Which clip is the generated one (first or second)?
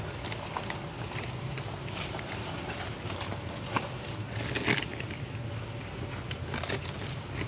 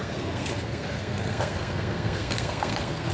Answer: second